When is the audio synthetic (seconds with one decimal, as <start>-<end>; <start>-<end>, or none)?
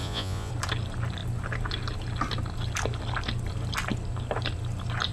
0.0-0.5